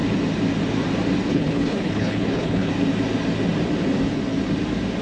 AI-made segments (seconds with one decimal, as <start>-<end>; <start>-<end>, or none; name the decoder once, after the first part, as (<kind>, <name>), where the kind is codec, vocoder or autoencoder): 1.3-2.7 (codec, HILCodec)